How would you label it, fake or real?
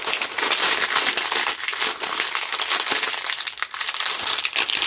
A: real